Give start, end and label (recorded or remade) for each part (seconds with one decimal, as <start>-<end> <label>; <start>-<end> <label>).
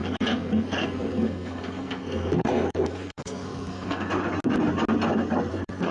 0.0-4.1 remade; 4.1-5.5 recorded; 5.5-5.9 remade